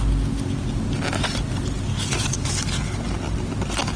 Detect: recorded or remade recorded